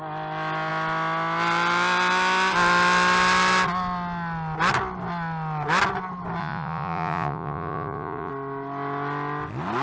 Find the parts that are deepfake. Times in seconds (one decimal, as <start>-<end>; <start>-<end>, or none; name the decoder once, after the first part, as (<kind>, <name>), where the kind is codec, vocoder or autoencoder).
6.4-8.3 (vocoder, Vocos)